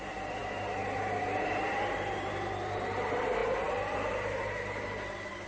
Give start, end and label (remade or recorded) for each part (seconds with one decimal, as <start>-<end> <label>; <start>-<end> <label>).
0.0-3.4 recorded; 3.4-4.1 remade; 4.1-5.5 recorded